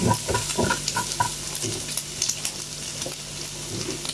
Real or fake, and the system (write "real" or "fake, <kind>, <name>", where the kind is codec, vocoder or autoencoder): real